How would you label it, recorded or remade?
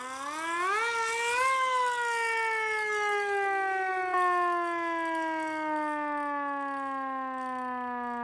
recorded